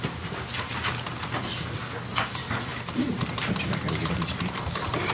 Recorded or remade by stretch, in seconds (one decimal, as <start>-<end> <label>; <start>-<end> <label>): 0.0-0.7 remade; 0.7-2.1 recorded; 2.1-5.1 remade